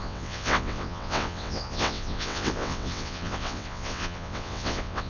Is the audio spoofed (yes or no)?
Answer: yes